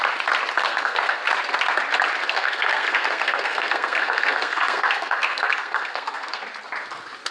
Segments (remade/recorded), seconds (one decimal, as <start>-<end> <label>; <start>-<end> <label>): 0.0-0.6 recorded; 0.6-1.2 remade; 1.2-2.2 recorded; 2.2-6.4 remade; 6.4-7.3 recorded